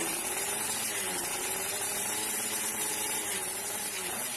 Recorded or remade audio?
remade